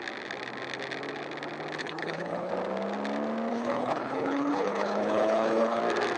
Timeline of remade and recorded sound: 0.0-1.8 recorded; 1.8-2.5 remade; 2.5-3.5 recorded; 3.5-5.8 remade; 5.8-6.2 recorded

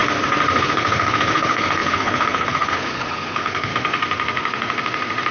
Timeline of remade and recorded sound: 0.0-0.6 recorded; 0.6-3.7 remade; 3.7-5.3 recorded

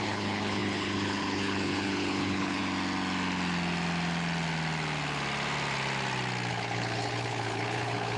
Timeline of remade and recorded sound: 0.0-2.6 remade; 2.6-6.5 recorded; 6.5-8.2 remade